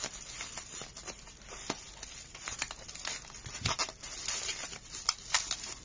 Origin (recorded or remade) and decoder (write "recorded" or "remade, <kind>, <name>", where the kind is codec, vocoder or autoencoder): recorded